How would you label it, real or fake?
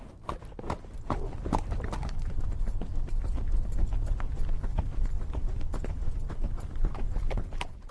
real